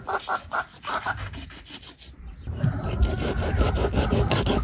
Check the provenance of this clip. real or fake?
real